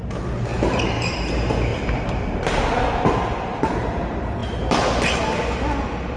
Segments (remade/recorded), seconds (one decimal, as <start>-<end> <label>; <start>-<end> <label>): 0.0-0.5 recorded; 0.5-1.2 remade; 1.2-1.7 recorded; 1.7-2.5 remade; 2.5-6.2 recorded